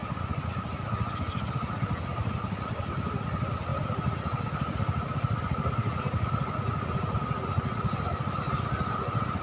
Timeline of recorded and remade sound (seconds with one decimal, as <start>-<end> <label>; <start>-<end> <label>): 0.0-9.4 recorded